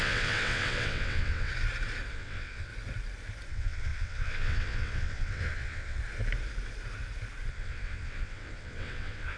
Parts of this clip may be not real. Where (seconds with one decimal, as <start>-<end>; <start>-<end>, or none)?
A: 0.0-1.5; 2.1-2.7; 3.5-6.0; 7.5-9.4